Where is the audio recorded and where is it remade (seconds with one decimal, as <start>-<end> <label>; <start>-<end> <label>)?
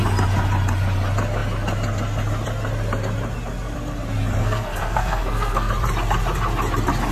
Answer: 0.0-4.4 recorded; 4.4-5.7 remade; 5.7-7.1 recorded